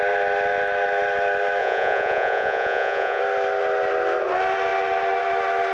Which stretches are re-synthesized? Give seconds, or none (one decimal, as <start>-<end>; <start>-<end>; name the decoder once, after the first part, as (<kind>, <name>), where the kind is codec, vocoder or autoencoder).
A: 1.6-3.2 (vocoder, Vocos)